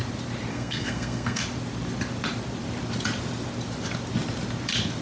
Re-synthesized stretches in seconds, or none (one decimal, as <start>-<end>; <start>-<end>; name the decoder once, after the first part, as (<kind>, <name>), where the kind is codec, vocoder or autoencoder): 0.5-1.4 (codec, SNAC)